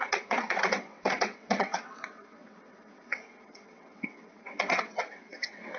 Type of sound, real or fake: fake